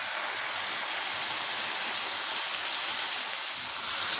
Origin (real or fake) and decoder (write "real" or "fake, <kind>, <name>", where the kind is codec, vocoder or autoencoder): real